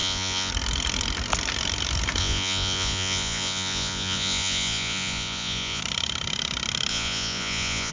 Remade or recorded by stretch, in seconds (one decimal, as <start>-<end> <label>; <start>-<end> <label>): 0.0-0.5 remade; 0.5-2.2 recorded; 2.2-5.8 remade; 5.8-6.9 recorded; 6.9-7.9 remade